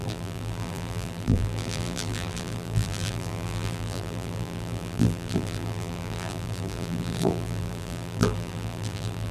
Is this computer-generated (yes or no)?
yes